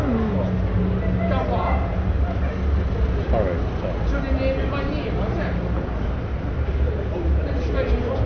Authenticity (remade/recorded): recorded